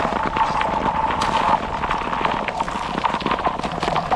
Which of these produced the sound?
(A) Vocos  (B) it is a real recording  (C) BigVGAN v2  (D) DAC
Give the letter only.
B